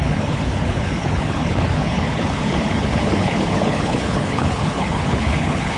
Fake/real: fake